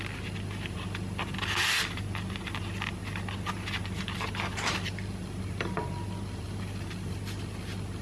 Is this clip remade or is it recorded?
recorded